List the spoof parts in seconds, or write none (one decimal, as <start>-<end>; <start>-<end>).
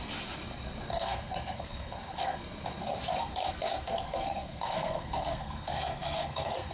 0.9-2.4; 3.2-6.7